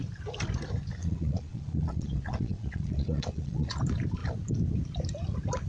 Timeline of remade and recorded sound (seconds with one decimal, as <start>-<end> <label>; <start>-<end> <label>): 0.0-1.0 recorded; 1.0-3.8 remade; 3.8-5.7 recorded